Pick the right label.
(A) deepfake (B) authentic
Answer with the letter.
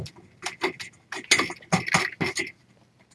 B